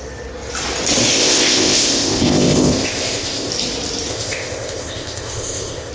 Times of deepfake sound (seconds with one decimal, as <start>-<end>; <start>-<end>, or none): 1.1-3.5; 4.1-5.9